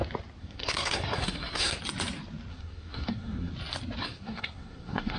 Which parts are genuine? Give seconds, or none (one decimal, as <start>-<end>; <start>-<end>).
0.0-0.4; 1.8-2.5; 3.5-4.0